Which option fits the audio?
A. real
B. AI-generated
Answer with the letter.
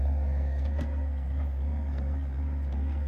B